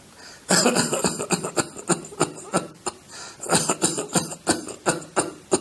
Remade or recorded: recorded